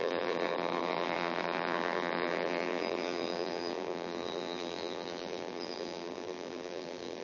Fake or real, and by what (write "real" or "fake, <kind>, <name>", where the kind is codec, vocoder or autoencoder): fake, vocoder, BigVGAN v2